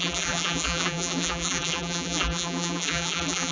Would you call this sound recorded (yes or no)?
no